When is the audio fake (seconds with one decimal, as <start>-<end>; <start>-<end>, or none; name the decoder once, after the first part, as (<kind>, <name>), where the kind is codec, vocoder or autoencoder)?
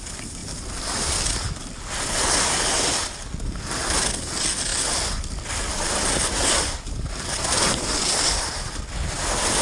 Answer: none